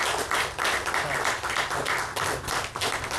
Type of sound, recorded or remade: recorded